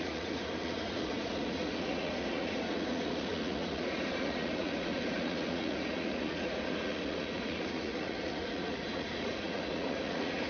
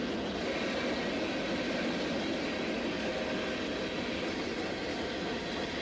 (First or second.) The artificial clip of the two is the first